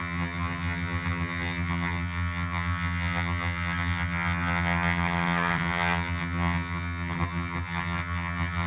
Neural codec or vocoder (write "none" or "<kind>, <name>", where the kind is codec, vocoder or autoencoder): vocoder, HiFi-GAN